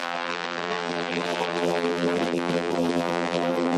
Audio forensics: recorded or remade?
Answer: remade